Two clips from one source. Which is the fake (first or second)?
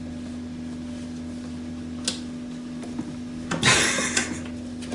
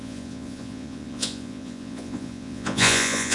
second